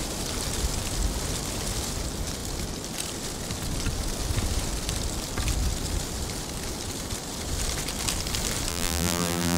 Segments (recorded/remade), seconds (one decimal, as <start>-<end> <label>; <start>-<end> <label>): 0.0-8.7 recorded; 8.7-9.6 remade